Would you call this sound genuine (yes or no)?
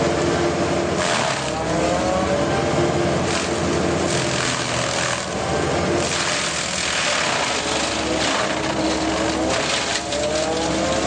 yes